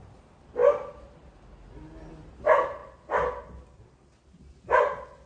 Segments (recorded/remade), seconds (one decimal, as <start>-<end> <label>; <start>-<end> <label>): 0.0-5.3 recorded